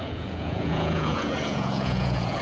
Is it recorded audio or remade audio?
remade